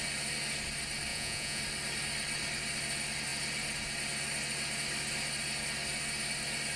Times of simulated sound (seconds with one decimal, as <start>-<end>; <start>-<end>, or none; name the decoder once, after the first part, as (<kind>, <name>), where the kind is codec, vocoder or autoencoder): 1.1-1.6 (vocoder, Vocos)